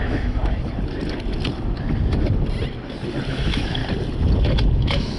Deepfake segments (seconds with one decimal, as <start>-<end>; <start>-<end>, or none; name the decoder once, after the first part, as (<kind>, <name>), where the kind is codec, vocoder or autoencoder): 0.0-0.4 (autoencoder, DAC-VAE); 3.3-3.8; 4.8-5.2

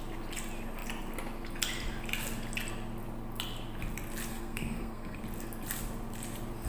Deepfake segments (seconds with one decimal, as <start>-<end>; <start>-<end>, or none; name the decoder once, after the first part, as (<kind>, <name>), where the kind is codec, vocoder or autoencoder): 4.3-5.2 (codec, SNAC)

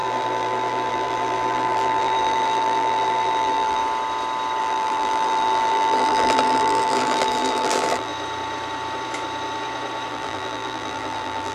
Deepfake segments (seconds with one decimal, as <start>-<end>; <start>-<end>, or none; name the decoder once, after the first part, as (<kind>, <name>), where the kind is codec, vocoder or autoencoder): 0.0-3.8 (vocoder, BigVGAN v2); 4.6-8.1; 10.1-11.5

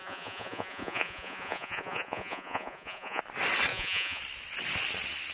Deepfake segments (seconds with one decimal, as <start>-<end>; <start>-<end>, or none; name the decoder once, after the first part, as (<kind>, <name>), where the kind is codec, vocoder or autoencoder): 0.0-3.2 (vocoder, Vocos); 3.7-4.2